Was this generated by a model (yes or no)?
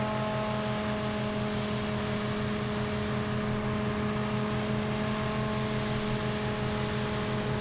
no